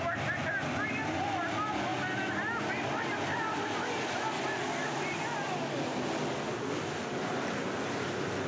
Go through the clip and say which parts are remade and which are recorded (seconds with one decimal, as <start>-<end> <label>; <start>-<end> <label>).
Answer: 0.0-8.5 recorded